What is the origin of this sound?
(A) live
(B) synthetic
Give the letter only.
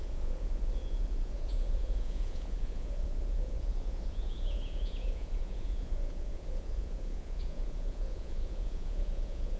B